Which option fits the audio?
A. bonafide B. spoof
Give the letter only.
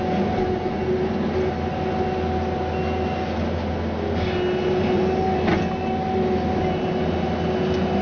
A